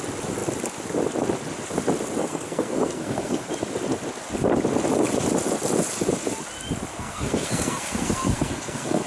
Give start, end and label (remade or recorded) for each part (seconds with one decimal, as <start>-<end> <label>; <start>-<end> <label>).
0.0-2.2 recorded; 2.2-3.5 remade; 3.5-6.9 recorded; 6.9-9.1 remade